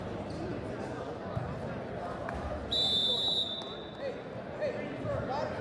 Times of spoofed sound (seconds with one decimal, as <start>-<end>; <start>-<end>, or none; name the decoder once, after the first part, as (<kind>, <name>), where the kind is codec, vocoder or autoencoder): none